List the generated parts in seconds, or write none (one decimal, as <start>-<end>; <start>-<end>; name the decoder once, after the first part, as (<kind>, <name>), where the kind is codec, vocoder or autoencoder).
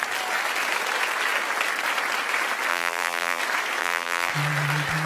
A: 2.7-3.4 (vocoder, BigVGAN v2); 3.8-4.3